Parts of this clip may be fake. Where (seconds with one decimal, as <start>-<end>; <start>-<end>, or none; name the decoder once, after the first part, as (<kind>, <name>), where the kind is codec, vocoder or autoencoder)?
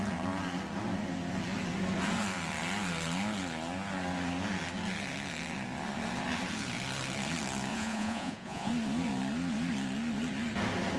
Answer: 7.7-8.7 (vocoder, Vocos)